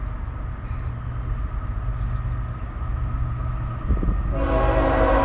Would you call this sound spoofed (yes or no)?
no